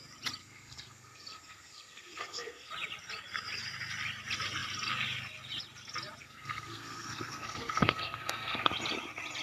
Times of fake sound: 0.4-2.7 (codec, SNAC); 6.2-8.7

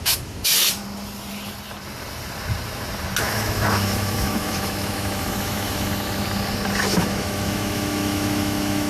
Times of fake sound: 0.0-0.5 (autoencoder, DAC-VAE); 3.2-5.9; 6.9-8.9

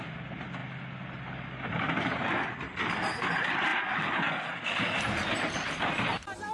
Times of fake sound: none